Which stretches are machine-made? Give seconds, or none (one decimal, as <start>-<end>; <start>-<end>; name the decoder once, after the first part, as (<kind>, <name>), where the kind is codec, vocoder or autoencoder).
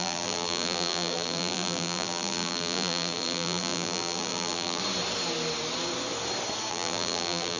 0.0-4.8 (vocoder, BigVGAN v2); 6.7-7.6